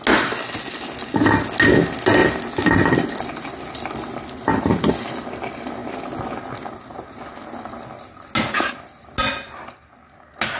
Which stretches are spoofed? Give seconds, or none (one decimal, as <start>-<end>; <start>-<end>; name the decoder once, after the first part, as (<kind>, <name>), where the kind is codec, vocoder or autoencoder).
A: none